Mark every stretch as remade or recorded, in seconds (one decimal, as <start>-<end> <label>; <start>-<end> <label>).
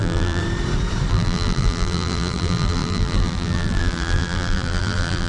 0.0-0.4 remade; 0.4-1.1 recorded; 1.1-5.3 remade